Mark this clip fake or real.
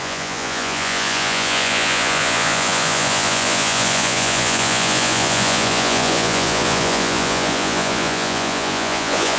fake